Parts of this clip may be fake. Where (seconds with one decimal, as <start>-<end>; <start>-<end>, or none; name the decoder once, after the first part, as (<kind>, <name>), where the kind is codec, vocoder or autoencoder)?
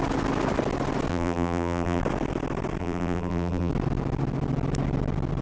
1.1-2.0 (vocoder, BigVGAN v2); 2.8-3.7